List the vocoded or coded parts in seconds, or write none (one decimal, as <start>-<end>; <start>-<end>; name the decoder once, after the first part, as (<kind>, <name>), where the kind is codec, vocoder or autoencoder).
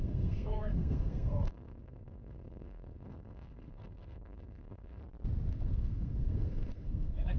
0.0-5.0 (codec, SNAC); 5.5-7.4